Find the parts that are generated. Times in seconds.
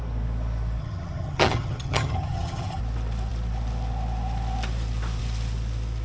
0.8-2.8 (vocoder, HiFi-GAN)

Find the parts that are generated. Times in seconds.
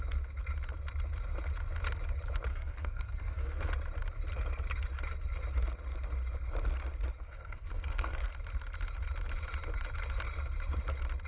2.5-3.6 (codec, SNAC); 7.2-8.3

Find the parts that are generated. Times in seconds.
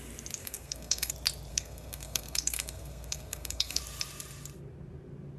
0.4-1.1 (codec, SNAC); 1.5-3.8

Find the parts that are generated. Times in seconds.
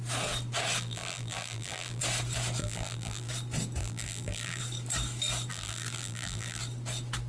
0.8-2.0 (vocoder, BigVGAN v2); 2.6-3.3; 3.8-4.6; 5.5-6.6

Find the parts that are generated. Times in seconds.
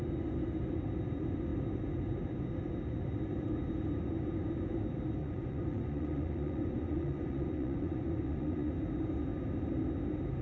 5.2-8.7 (vocoder, Vocos)